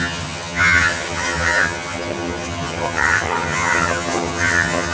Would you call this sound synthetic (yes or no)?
yes